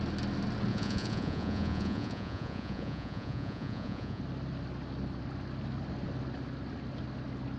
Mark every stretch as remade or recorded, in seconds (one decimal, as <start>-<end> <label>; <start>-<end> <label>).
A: 0.0-0.7 recorded; 0.7-4.2 remade; 4.2-7.6 recorded